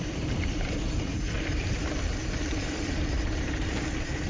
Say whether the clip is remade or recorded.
remade